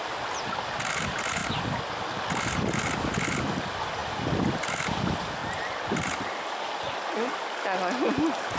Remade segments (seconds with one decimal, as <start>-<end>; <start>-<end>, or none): 5.4-7.0